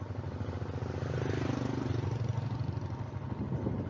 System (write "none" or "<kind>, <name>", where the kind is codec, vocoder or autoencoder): none